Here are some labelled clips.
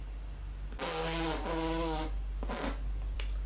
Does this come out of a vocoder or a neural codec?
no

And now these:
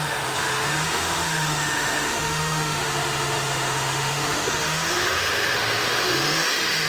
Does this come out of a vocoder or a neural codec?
yes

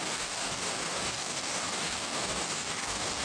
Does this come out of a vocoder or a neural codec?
yes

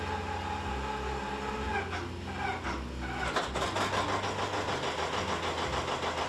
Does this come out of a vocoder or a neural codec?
no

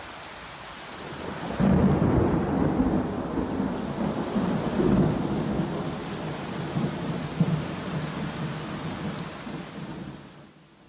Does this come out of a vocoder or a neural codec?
no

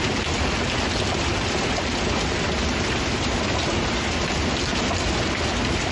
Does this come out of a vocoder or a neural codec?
no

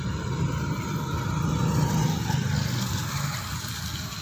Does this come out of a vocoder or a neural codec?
no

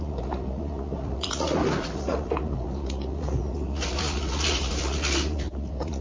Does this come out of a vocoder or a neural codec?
yes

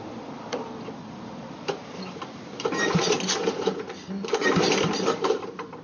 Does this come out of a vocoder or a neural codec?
yes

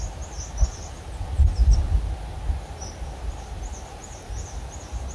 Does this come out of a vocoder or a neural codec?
no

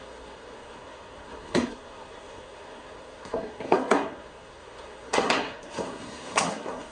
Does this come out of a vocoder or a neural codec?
yes